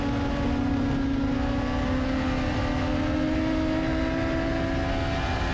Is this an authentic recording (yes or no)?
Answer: yes